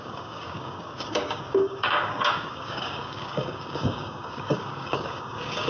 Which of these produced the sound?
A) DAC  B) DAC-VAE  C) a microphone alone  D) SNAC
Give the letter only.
A